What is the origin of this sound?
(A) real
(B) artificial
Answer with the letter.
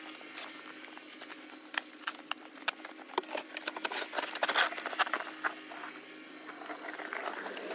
A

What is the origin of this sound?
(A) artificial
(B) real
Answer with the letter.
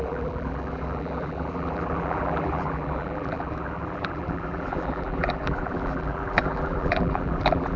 A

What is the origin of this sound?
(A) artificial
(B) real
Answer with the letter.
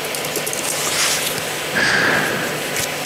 B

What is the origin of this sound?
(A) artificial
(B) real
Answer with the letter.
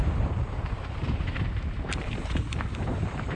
A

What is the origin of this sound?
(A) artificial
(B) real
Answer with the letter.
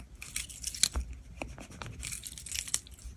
B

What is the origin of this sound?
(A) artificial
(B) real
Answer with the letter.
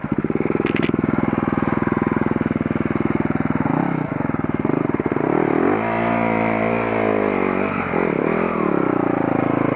B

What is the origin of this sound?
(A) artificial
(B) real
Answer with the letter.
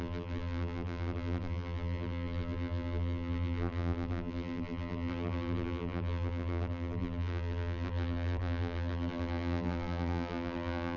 A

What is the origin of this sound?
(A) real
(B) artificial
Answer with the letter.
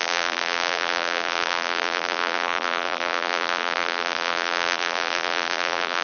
B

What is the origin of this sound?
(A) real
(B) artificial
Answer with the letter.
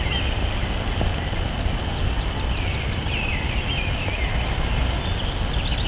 A